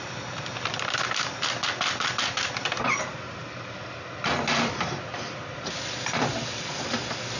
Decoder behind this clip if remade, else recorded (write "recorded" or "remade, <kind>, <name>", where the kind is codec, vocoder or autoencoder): recorded